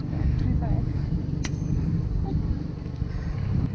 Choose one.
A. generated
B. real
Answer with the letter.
B